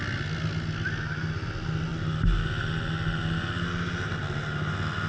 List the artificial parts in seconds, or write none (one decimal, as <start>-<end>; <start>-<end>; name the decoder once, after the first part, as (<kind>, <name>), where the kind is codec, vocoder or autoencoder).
none